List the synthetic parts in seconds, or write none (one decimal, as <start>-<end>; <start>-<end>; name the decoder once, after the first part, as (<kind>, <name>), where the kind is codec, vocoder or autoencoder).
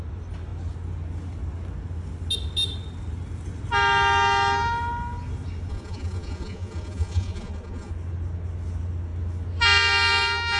5.7-7.9 (vocoder, Vocos)